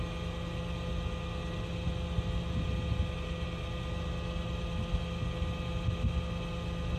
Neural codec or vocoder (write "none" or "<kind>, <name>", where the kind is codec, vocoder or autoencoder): none